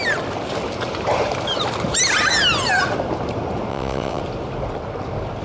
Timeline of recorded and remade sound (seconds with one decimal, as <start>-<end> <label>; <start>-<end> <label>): 0.0-3.7 recorded; 3.7-4.2 remade; 4.2-5.4 recorded